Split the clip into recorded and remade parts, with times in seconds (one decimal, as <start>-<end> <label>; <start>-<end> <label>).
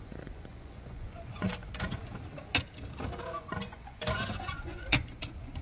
0.0-2.1 remade; 2.1-3.4 recorded; 3.4-5.6 remade